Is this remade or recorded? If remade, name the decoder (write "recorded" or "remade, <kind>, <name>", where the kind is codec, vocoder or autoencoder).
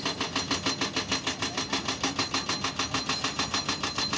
recorded